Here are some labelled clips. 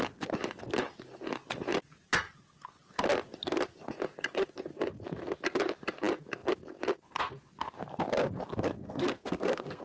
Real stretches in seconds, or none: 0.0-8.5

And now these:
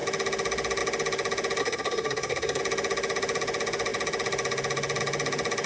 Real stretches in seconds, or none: 0.0-1.6; 2.6-5.7

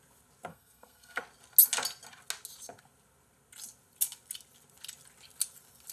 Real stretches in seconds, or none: 0.0-0.5; 1.2-5.9

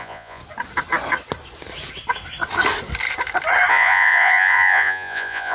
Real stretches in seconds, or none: 0.4-3.7

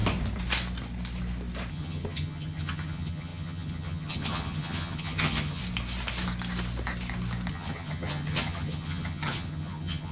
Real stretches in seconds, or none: 0.0-1.7; 5.6-7.5

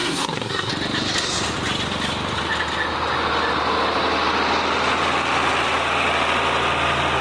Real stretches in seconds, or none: 0.7-7.2

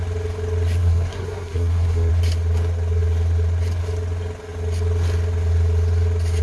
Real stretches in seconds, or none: 0.0-0.8; 2.1-6.4